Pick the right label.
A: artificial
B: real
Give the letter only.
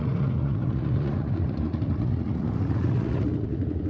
A